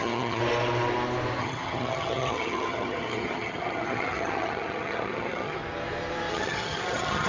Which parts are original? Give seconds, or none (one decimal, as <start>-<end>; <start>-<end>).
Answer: 0.4-1.4; 5.6-6.3